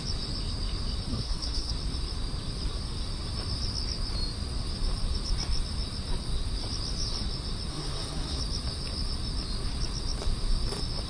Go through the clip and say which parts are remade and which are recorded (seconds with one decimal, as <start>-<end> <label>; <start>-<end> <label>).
0.0-1.1 recorded; 1.1-1.7 remade; 1.7-7.7 recorded; 7.7-8.4 remade; 8.4-11.1 recorded